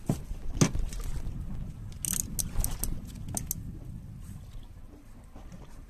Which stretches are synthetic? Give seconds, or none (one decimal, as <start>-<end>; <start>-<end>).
none